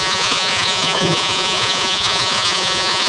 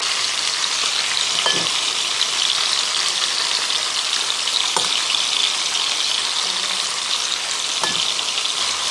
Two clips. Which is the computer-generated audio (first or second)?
first